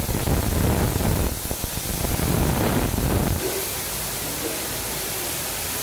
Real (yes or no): no